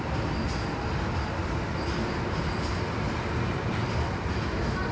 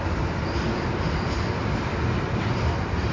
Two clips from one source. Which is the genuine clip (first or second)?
first